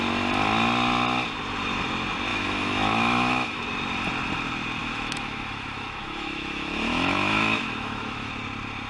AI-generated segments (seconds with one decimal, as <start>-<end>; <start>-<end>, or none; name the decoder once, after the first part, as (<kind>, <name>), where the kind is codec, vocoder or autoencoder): 2.3-3.6 (autoencoder, DAC-VAE); 4.8-8.3